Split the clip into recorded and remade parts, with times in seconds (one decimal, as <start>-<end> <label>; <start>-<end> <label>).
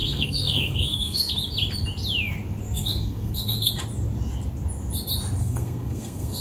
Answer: 0.0-1.3 remade; 1.3-2.6 recorded; 2.6-3.7 remade; 3.7-5.4 recorded; 5.4-6.4 remade